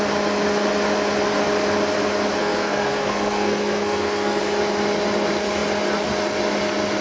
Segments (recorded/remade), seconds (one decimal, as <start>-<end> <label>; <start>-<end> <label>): 0.0-2.4 recorded; 2.4-4.4 remade; 4.4-7.0 recorded